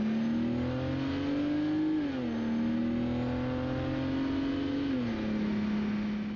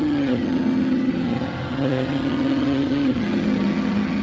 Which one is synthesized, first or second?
second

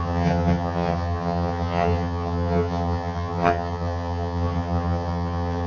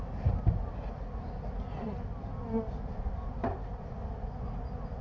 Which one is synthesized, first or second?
first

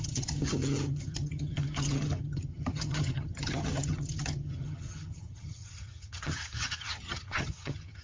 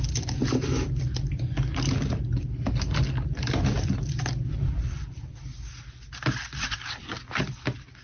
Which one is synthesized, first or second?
first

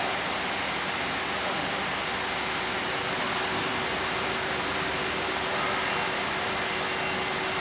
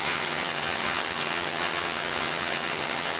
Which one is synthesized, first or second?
second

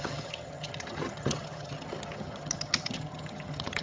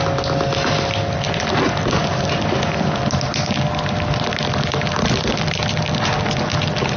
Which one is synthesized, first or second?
first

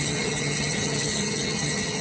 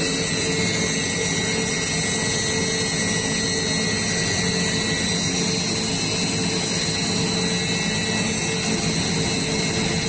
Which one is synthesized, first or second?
first